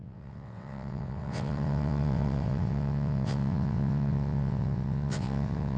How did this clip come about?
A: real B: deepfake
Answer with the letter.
B